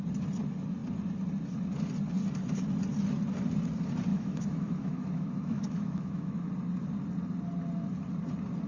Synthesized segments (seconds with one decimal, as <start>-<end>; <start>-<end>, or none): 4.1-6.5